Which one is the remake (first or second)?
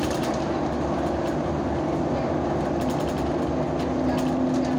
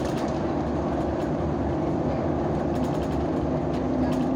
second